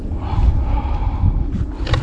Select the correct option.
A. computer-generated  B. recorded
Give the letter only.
B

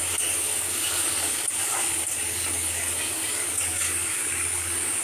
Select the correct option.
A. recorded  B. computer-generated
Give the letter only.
B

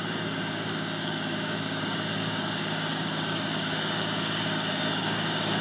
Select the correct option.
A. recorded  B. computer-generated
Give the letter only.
B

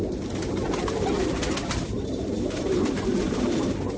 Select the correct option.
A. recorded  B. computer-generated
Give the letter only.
A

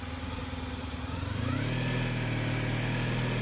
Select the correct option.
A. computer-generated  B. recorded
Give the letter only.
B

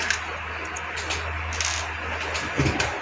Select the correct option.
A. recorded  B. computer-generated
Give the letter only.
A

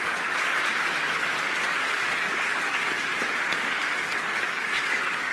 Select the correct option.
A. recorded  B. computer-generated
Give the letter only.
B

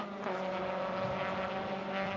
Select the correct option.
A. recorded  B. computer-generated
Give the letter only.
A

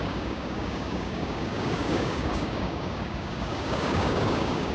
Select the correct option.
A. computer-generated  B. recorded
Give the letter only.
A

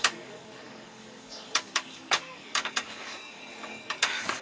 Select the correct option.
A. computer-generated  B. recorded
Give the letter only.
A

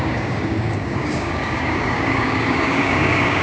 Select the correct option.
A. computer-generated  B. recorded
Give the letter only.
A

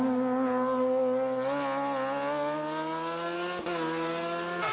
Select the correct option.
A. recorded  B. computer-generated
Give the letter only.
A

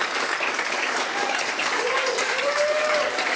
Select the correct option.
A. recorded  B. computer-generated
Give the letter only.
B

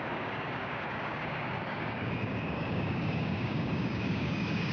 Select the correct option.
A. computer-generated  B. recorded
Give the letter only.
A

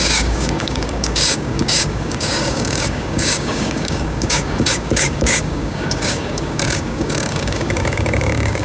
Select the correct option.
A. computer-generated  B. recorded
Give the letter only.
A